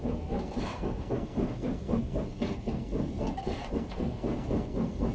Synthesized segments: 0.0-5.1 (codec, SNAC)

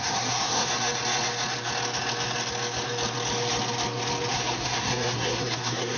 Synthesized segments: 0.0-0.7 (codec, SNAC); 4.3-6.0

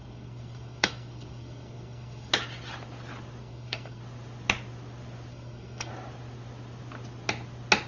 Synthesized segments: 0.0-2.3 (codec, SNAC); 3.4-4.0; 5.3-5.9

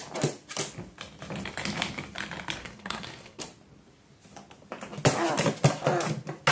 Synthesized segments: 2.6-3.4 (codec, SNAC)

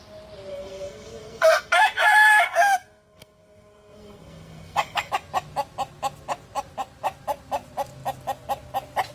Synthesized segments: 0.5-5.1 (codec, SNAC)